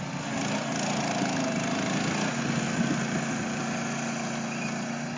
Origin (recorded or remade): recorded